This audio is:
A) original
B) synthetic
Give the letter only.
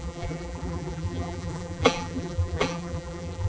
B